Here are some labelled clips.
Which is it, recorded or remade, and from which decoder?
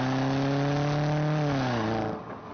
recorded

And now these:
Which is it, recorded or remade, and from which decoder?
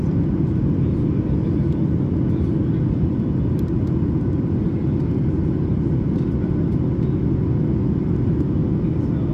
recorded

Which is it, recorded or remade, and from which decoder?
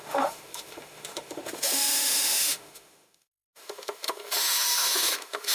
remade, autoencoder, DAC-VAE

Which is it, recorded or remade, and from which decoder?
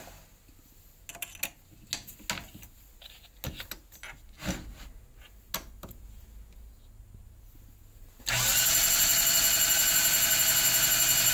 recorded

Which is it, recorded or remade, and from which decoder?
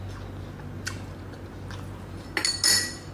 recorded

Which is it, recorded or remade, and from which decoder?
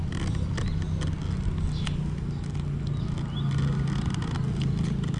recorded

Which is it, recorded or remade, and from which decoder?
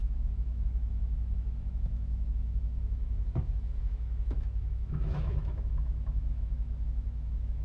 remade, autoencoder, DAC-VAE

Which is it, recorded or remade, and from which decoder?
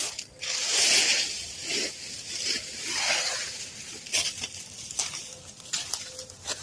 recorded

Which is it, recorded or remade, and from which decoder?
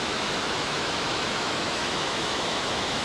remade, autoencoder, DAC-VAE